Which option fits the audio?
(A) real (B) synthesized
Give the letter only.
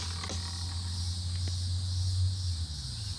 A